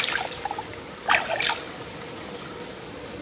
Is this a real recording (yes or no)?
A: yes